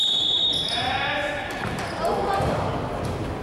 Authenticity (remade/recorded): recorded